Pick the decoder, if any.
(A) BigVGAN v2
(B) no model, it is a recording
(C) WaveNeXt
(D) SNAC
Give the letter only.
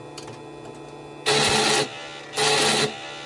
B